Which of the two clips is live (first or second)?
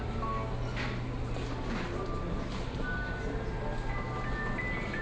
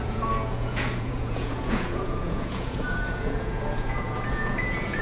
first